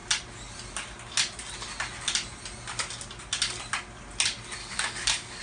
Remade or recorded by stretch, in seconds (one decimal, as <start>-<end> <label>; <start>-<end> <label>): 0.0-4.6 recorded; 4.6-5.4 remade